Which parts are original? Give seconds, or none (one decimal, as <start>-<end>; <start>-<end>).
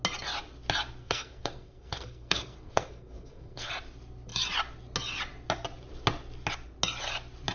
0.0-1.0; 3.7-7.5